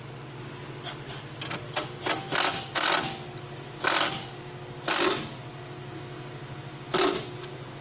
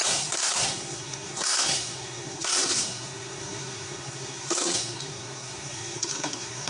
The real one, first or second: first